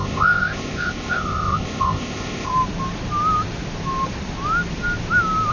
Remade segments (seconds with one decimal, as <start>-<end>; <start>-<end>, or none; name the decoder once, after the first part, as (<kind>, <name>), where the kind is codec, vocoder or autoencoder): 0.0-2.5 (codec, ZipCodec)